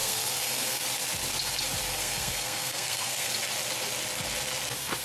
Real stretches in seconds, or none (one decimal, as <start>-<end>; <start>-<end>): 0.8-1.9; 3.3-5.0